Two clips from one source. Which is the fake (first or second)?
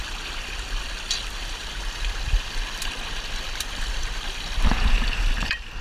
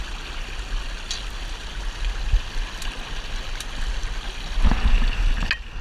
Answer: first